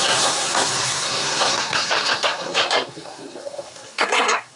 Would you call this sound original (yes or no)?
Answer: no